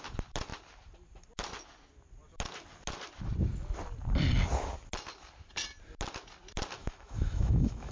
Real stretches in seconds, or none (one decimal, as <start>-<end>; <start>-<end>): 0.0-6.8